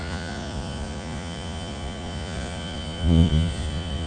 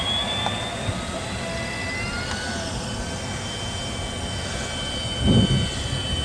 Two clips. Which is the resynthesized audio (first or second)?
first